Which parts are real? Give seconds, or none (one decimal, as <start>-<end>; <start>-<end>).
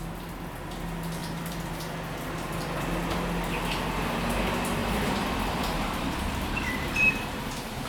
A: 0.0-1.2; 1.8-4.8